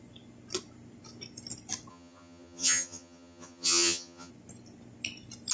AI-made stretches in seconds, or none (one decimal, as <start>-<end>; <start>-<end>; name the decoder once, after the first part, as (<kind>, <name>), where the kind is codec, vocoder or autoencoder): 1.9-4.3 (vocoder, HiFi-GAN)